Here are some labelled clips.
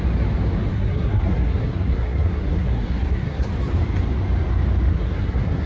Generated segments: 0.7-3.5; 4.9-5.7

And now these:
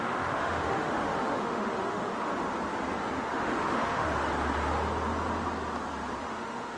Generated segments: 0.0-2.3; 3.2-4.1; 6.2-6.8

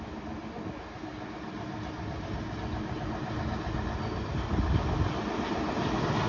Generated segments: none

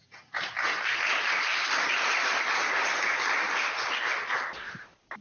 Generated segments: 0.0-0.5

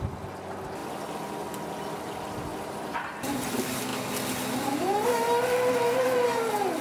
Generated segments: 2.5-3.3

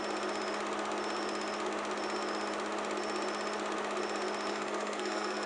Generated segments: 4.5-5.5

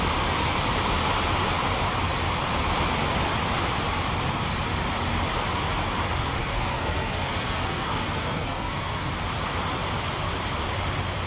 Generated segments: 6.4-9.1

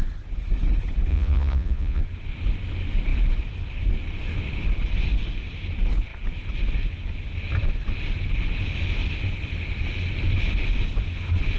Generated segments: 1.1-2.0